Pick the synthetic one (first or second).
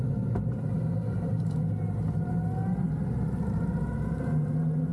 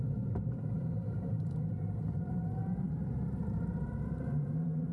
second